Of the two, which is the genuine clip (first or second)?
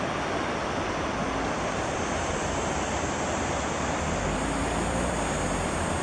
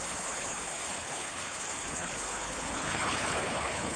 first